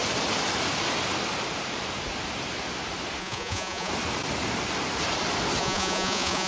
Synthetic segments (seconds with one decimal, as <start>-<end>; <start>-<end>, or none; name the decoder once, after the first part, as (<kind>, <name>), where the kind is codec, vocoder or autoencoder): 3.2-3.9 (vocoder, Vocos); 5.6-6.5